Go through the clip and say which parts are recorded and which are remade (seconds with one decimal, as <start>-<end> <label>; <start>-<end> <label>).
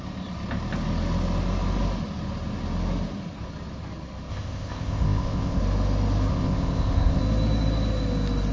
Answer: 0.0-4.3 recorded; 4.3-5.6 remade; 5.6-6.3 recorded; 6.3-7.2 remade; 7.2-8.5 recorded